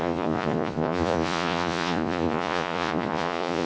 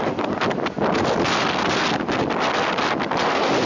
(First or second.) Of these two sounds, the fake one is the first